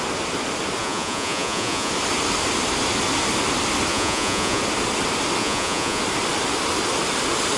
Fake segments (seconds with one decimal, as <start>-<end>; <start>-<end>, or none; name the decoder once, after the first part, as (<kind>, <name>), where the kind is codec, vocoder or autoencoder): 0.8-1.9 (vocoder, Vocos); 3.9-4.6; 5.4-6.0